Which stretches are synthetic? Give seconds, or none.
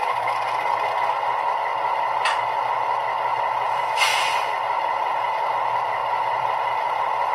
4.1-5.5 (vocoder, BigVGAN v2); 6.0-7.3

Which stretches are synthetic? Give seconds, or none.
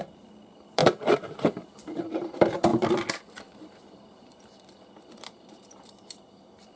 0.0-0.8 (vocoder, BigVGAN v2); 1.6-6.8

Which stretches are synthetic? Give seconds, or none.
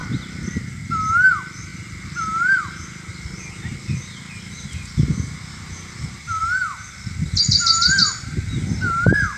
none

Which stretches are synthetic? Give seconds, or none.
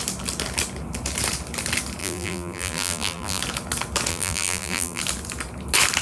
2.0-3.4 (vocoder, BigVGAN v2); 4.1-5.0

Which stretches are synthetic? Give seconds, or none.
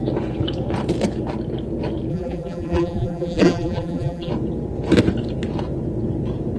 2.1-4.3 (vocoder, BigVGAN v2)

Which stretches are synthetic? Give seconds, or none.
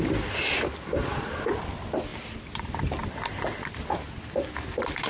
2.1-2.7 (vocoder, BigVGAN v2)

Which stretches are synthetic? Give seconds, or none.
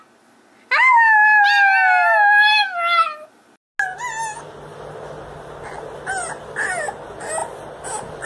7.4-8.3 (vocoder, BigVGAN v2)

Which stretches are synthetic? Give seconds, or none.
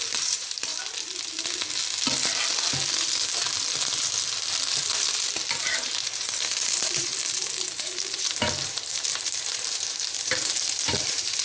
0.0-0.7 (vocoder, BigVGAN v2); 5.6-7.1; 7.7-11.4